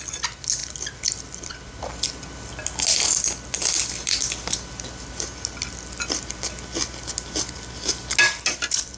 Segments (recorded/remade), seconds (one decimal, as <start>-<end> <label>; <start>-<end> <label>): 0.0-9.0 recorded

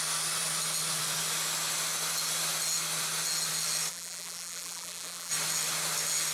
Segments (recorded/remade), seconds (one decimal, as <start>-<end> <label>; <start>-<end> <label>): 0.0-3.9 recorded; 3.9-5.3 remade; 5.3-6.3 recorded

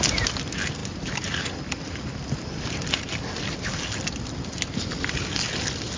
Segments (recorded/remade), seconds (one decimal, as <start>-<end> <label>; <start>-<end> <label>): 0.0-6.0 recorded

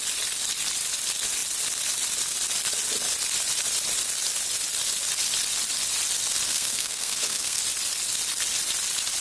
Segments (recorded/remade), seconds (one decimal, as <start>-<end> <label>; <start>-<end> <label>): 0.0-6.5 recorded; 6.5-7.6 remade; 7.6-9.2 recorded

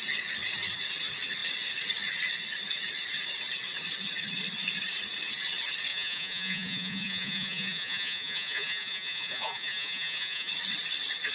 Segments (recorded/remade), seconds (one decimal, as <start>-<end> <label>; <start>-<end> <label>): 0.0-5.9 recorded; 5.9-10.5 remade; 10.5-11.3 recorded

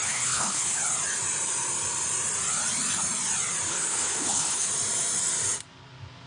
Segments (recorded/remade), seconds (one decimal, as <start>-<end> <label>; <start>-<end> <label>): 0.0-0.8 remade; 0.8-3.7 recorded; 3.7-4.7 remade; 4.7-6.3 recorded

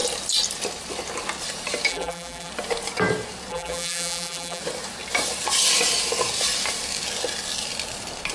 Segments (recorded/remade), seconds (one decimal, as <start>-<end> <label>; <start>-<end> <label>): 0.0-1.9 recorded; 1.9-2.5 remade; 2.5-3.5 recorded; 3.5-4.6 remade; 4.6-8.3 recorded